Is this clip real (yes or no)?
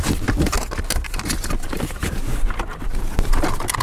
yes